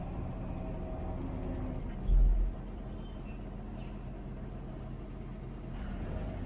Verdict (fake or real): real